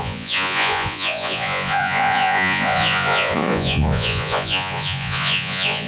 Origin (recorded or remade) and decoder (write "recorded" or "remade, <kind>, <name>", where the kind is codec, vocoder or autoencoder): remade, vocoder, Vocos